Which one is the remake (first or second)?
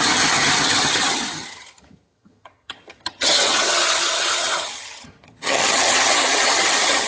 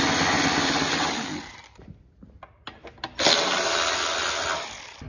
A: first